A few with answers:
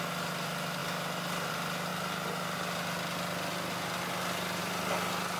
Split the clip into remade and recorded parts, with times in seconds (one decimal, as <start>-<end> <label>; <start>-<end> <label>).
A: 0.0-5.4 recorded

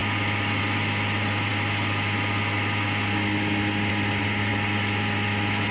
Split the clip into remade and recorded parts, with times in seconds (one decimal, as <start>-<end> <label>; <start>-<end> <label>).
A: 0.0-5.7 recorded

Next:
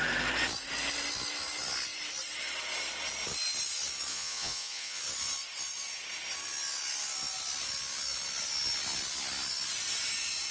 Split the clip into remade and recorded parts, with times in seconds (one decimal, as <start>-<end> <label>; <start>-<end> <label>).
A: 0.0-4.1 recorded; 4.1-5.0 remade; 5.0-10.5 recorded

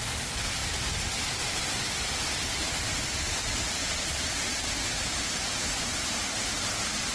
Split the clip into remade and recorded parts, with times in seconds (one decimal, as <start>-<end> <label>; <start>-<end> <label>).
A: 0.0-3.8 recorded; 3.8-4.7 remade; 4.7-7.1 recorded

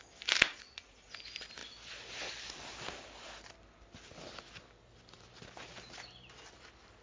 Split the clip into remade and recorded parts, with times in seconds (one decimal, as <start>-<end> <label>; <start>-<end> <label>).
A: 0.0-0.5 recorded; 0.5-1.1 remade; 1.1-7.0 recorded

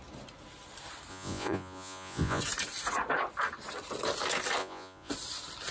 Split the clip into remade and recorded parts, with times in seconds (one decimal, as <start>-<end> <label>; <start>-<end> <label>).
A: 0.0-1.1 recorded; 1.1-2.4 remade; 2.4-4.6 recorded; 4.6-5.1 remade; 5.1-5.7 recorded